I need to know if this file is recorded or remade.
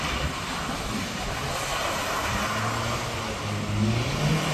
recorded